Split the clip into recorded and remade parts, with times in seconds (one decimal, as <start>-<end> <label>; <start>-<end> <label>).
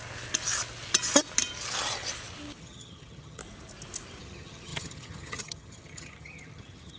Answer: 0.0-2.6 recorded; 2.6-3.4 remade; 3.4-4.2 recorded; 4.2-7.0 remade